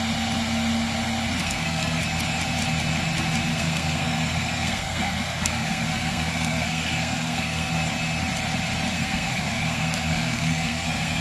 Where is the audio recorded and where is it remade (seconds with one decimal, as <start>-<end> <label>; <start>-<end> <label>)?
0.0-1.4 recorded; 1.4-2.0 remade; 2.0-3.5 recorded; 3.5-7.7 remade; 7.7-8.9 recorded; 8.9-11.2 remade